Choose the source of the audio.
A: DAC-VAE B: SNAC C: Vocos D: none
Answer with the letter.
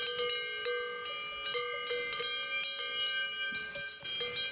D